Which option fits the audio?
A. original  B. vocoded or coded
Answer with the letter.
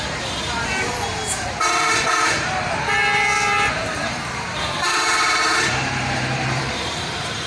B